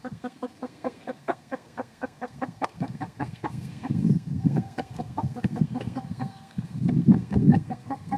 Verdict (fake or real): fake